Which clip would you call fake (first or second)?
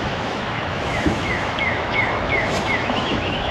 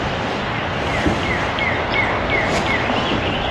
first